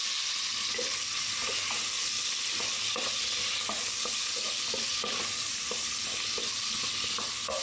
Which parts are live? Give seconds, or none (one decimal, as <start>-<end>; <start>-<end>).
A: 0.0-7.6

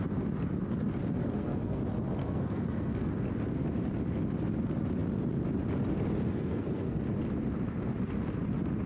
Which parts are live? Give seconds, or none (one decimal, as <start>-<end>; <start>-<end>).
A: 0.0-1.2; 1.8-2.2; 3.1-6.3; 7.0-8.9

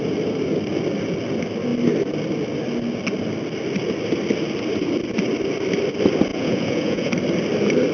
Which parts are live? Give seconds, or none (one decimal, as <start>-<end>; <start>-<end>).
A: 0.0-6.3; 7.1-7.9

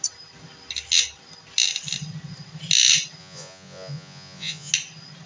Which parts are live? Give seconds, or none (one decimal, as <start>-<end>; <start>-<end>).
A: 0.0-3.2; 4.7-5.3

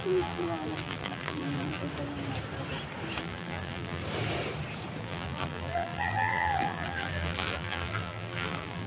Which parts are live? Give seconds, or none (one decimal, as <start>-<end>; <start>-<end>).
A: 1.9-3.2; 4.0-5.0